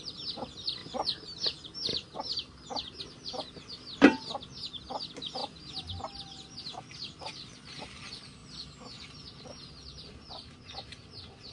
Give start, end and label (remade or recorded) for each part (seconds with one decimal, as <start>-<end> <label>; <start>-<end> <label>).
0.0-11.5 recorded